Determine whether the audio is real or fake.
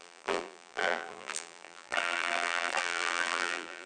fake